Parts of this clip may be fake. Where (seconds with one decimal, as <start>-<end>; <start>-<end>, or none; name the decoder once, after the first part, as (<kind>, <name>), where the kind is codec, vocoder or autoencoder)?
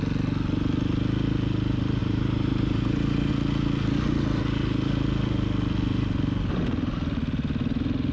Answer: 2.0-3.3 (vocoder, BigVGAN v2)